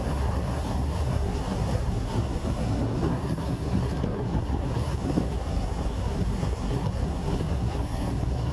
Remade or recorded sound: remade